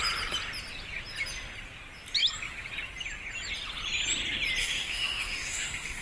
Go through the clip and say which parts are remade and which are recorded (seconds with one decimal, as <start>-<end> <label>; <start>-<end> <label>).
0.0-4.6 recorded; 4.6-6.0 remade